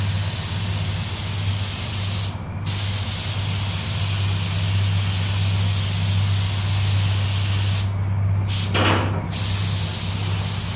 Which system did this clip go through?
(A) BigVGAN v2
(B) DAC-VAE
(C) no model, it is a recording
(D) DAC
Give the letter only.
C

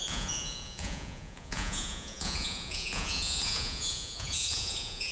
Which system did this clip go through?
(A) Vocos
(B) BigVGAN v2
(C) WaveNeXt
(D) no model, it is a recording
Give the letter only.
A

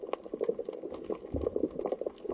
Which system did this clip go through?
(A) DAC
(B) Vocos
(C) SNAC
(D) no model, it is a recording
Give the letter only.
D